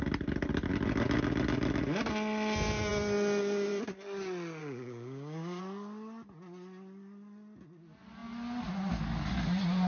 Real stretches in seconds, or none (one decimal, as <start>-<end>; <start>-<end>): 0.0-4.6; 5.6-9.9